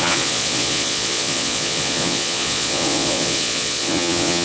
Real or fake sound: fake